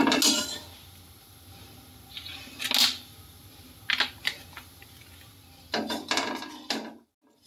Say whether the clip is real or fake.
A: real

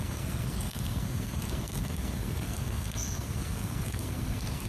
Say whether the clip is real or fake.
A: fake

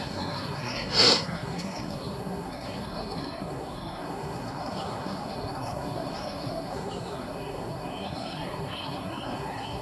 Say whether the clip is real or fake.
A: fake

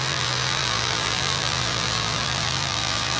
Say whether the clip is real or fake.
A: fake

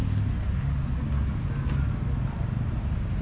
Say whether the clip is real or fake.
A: real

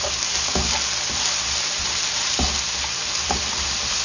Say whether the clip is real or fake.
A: real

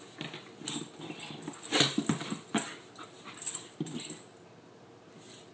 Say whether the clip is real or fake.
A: real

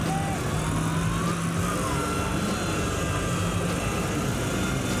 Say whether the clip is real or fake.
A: real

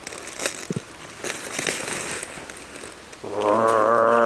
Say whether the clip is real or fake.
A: real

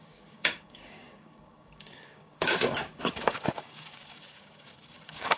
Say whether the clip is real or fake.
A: fake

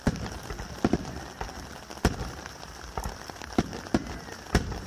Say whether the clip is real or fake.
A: fake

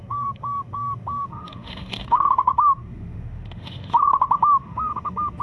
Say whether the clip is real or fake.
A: fake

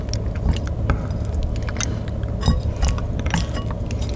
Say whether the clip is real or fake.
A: real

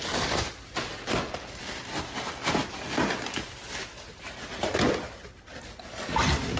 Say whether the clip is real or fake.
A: real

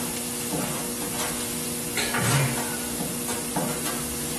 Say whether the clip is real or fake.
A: real